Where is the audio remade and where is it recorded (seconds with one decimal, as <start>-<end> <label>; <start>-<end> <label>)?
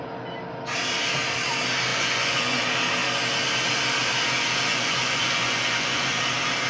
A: 0.0-1.9 recorded; 1.9-2.6 remade; 2.6-4.7 recorded; 4.7-6.2 remade; 6.2-6.7 recorded